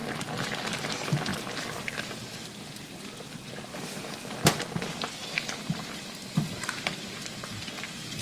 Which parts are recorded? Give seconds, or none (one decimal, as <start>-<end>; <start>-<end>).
0.0-1.3; 2.2-3.7; 4.6-5.2; 6.8-8.2